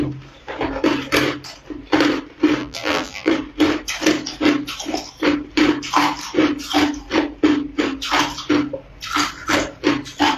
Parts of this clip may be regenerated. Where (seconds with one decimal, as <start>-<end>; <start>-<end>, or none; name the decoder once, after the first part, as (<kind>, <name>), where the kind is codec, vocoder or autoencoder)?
2.6-3.3 (vocoder, BigVGAN v2)